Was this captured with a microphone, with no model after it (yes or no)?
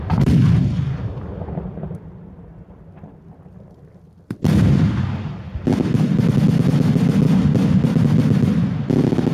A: yes